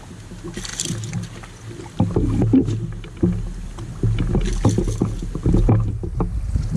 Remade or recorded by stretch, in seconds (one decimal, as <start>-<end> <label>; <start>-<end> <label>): 0.0-6.8 recorded